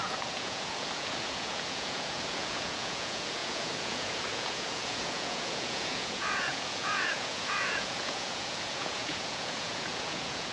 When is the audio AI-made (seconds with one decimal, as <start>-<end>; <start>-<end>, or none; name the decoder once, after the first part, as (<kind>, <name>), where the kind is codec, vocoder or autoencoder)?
0.0-10.5 (vocoder, Vocos)